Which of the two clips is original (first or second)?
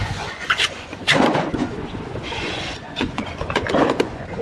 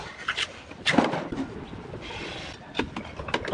second